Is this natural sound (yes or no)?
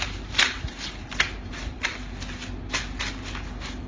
yes